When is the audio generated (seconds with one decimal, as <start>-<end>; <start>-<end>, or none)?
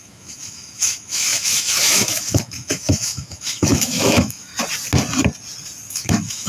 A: 0.0-4.5; 5.9-6.5